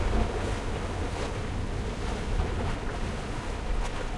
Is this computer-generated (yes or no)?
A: no